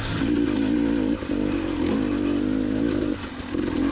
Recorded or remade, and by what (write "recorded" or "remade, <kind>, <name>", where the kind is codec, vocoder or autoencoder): recorded